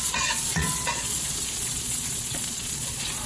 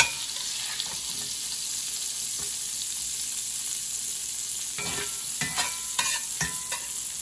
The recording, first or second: second